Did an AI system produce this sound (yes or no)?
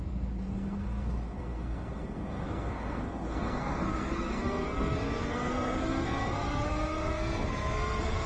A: yes